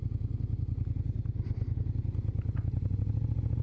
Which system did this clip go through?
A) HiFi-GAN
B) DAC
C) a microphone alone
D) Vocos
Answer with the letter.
C